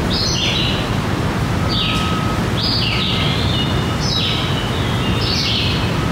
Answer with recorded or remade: recorded